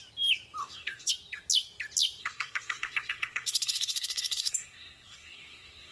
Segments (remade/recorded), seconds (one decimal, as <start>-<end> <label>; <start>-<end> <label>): 0.0-0.6 recorded; 0.6-1.1 remade; 1.1-2.2 recorded; 2.2-5.9 remade